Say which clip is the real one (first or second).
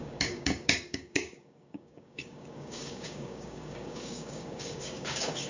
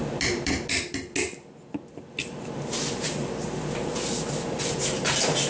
second